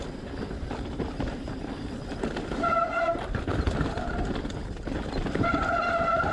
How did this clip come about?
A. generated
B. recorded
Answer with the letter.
A